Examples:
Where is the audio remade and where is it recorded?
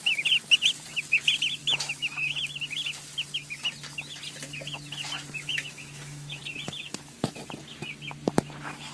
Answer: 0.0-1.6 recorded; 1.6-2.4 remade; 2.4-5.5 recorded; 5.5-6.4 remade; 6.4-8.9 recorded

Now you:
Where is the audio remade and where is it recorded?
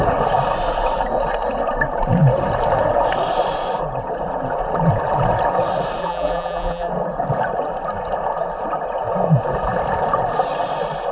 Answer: 0.0-6.0 recorded; 6.0-6.9 remade; 6.9-11.1 recorded